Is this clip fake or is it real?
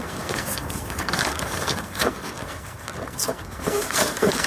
fake